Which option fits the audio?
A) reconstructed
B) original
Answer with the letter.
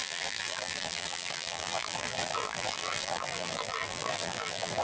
A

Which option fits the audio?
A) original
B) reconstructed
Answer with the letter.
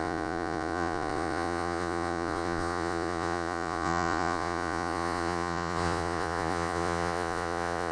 B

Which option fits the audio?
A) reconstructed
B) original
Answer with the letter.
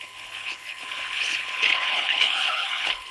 A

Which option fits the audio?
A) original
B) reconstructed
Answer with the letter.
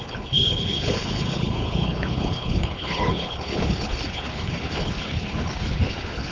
B